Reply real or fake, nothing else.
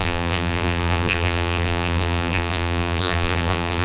fake